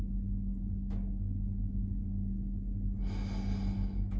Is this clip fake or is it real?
real